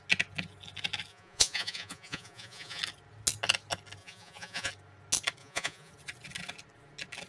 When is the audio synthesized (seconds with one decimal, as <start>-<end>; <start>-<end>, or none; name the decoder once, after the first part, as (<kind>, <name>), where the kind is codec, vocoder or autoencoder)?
1.1-2.8 (vocoder, Vocos); 4.0-4.7; 5.4-5.9